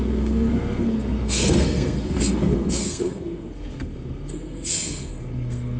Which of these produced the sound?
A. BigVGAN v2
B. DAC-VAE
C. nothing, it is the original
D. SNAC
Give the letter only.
D